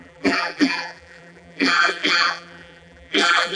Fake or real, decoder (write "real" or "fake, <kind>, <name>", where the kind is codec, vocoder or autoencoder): fake, vocoder, BigVGAN v2